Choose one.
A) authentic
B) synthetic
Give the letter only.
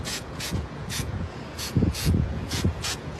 B